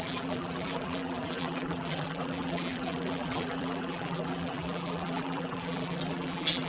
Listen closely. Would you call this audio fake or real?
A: fake